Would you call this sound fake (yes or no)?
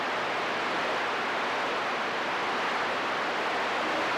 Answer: no